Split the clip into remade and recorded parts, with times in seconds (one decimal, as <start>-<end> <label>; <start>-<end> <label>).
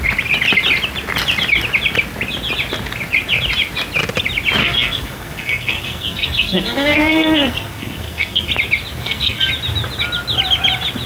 0.0-4.6 recorded; 4.6-8.5 remade; 8.5-9.0 recorded; 9.0-9.5 remade; 9.5-11.1 recorded